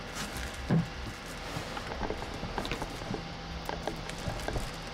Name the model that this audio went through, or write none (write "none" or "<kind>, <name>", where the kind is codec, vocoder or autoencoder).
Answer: none